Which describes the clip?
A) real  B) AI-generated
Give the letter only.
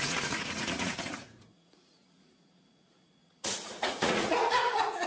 B